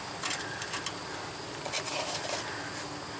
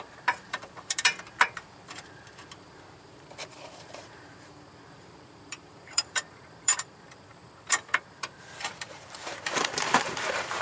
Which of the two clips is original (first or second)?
first